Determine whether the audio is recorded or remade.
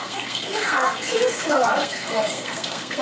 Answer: remade